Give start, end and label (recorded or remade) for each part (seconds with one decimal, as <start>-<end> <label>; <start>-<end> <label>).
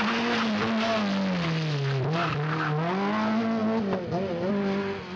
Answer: 0.0-5.2 recorded